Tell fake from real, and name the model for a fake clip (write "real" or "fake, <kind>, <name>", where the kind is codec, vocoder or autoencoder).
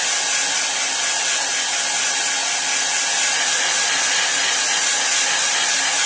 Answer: real